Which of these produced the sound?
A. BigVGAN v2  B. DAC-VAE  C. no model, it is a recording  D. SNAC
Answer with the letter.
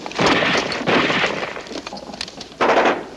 C